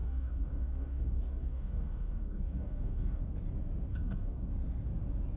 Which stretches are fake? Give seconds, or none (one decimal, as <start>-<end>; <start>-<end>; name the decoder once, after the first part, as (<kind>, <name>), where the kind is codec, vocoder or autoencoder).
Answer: 0.0-3.2 (codec, DAC); 3.9-4.5